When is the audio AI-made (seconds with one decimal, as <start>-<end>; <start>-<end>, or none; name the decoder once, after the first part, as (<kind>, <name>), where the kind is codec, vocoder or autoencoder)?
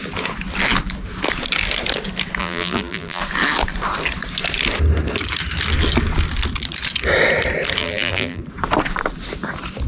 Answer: 2.4-3.2 (vocoder, BigVGAN v2); 7.8-8.4